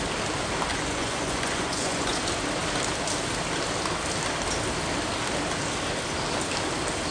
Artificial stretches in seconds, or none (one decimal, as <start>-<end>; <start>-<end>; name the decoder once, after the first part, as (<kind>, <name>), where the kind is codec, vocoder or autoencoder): 0.7-2.2 (vocoder, Vocos)